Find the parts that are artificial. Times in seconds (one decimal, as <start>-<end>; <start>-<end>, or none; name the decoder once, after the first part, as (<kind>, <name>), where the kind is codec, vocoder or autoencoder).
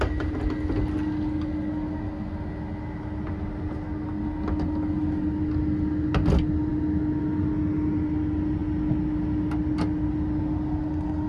none